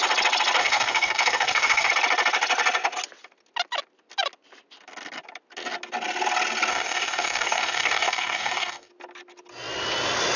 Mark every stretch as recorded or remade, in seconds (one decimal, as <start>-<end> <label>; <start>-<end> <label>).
0.0-0.6 recorded; 0.6-1.9 remade; 1.9-6.7 recorded; 6.7-8.9 remade; 8.9-10.4 recorded